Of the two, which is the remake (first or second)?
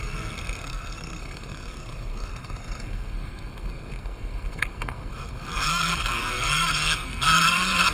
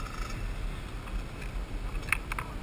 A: first